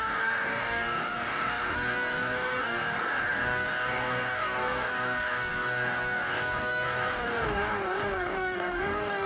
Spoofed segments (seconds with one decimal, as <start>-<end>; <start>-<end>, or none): 0.0-9.3